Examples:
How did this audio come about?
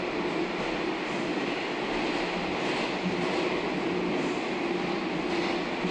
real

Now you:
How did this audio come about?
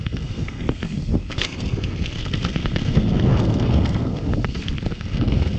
fake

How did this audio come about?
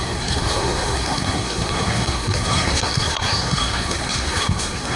fake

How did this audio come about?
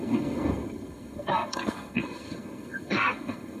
fake